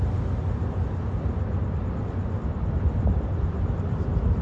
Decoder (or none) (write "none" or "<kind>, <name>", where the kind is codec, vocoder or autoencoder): none